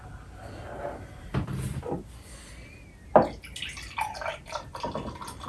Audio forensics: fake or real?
real